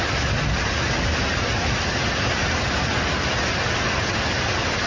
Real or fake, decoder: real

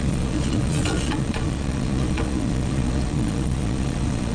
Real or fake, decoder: fake, vocoder, Vocos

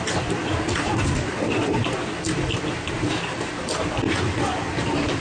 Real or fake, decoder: real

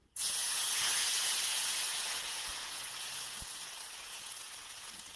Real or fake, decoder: fake, vocoder, Vocos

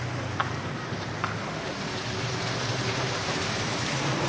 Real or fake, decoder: real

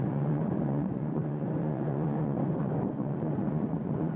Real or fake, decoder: fake, vocoder, Vocos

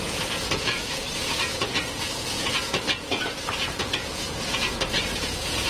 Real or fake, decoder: fake, vocoder, Vocos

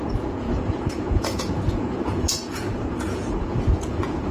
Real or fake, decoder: fake, vocoder, Vocos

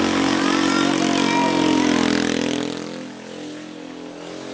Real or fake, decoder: real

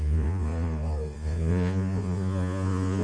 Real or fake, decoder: fake, vocoder, Vocos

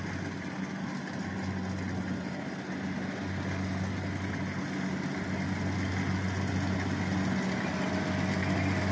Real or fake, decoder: real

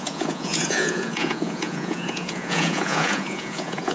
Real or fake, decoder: fake, vocoder, Vocos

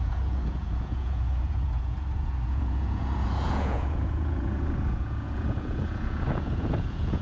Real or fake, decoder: fake, vocoder, Vocos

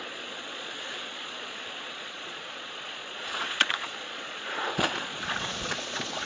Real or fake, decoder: fake, vocoder, Vocos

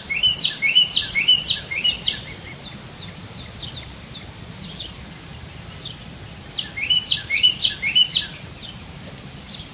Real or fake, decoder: real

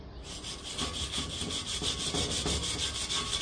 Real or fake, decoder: real